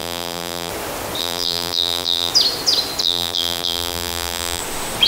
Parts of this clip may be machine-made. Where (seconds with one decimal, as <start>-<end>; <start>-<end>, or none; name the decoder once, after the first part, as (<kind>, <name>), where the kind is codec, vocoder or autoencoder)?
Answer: 0.0-0.7 (vocoder, BigVGAN v2); 1.2-2.3; 3.0-4.6